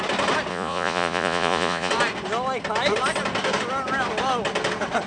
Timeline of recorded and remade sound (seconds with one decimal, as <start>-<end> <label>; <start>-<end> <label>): 0.0-0.5 recorded; 0.5-1.9 remade; 1.9-5.1 recorded